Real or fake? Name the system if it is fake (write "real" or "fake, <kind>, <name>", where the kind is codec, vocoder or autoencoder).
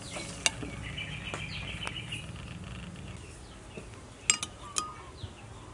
real